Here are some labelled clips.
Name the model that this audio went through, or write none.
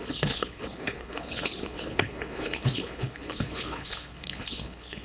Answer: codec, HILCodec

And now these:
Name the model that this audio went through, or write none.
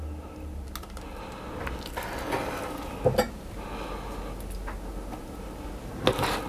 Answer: none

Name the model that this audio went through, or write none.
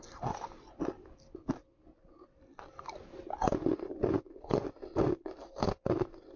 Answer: none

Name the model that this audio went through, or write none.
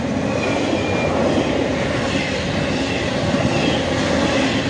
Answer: none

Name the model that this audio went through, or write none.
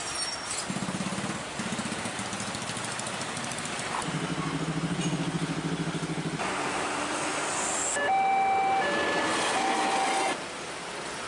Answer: none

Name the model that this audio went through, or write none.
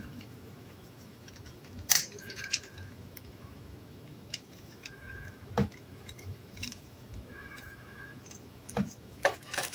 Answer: autoencoder, DAC-VAE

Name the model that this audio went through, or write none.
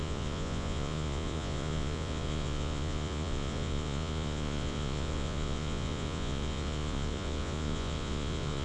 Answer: vocoder, Vocos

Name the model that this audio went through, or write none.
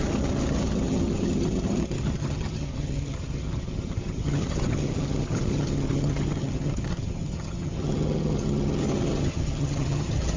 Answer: vocoder, HiFi-GAN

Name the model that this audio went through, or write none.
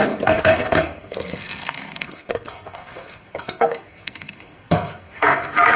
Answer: codec, SNAC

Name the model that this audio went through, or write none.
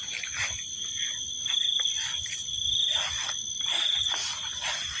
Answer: none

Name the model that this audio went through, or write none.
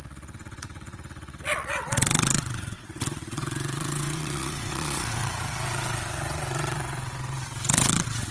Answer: vocoder, WaveNeXt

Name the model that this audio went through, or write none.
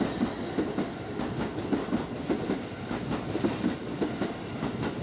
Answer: none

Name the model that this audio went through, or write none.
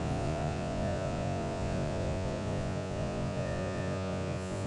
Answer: vocoder, Vocos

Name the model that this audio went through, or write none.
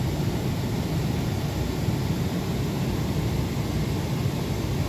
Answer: none